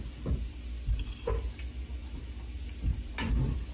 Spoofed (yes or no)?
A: no